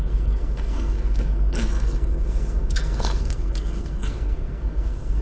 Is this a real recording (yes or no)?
no